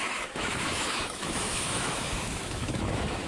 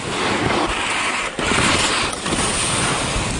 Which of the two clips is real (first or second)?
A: second